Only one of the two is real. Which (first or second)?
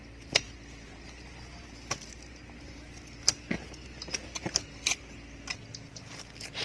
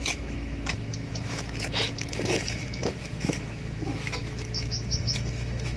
first